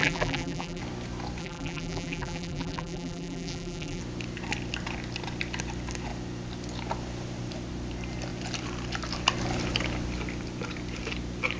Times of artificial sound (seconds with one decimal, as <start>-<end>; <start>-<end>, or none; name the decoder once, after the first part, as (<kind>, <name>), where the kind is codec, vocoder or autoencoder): 0.0-0.8 (vocoder, BigVGAN v2); 1.4-4.0